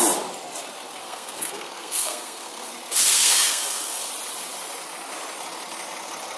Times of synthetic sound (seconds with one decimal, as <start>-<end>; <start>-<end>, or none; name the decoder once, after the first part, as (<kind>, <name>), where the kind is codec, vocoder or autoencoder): 1.0-2.7 (codec, SNAC); 3.1-4.1